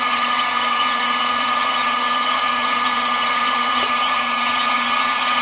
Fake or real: fake